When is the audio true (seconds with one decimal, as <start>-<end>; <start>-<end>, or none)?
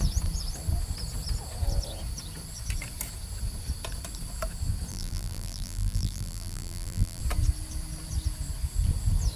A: 0.0-4.9; 7.2-9.4